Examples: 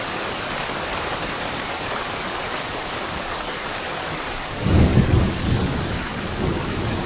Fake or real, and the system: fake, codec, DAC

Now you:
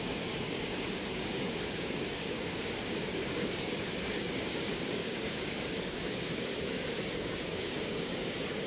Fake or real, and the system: fake, codec, DAC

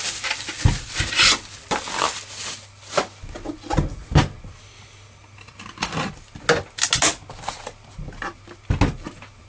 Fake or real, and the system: real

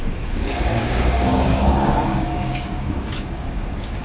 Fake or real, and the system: fake, codec, DAC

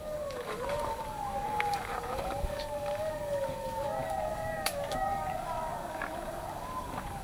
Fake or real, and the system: fake, codec, DAC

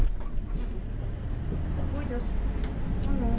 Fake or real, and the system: real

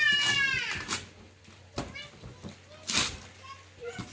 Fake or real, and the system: real